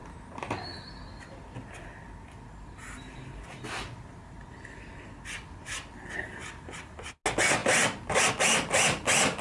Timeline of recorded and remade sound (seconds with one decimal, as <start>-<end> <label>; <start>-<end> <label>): 0.0-9.4 recorded